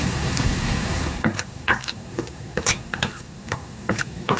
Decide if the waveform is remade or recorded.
remade